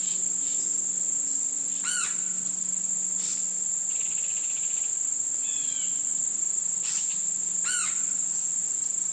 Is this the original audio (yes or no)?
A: yes